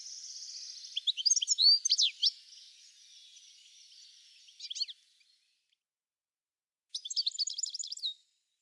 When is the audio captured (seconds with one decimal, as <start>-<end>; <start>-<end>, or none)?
0.0-8.6